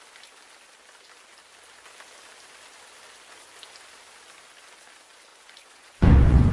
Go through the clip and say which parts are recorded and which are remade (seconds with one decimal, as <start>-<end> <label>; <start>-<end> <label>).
0.0-5.3 recorded; 5.3-6.5 remade